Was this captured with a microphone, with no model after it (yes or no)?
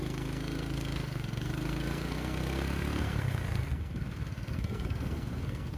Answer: no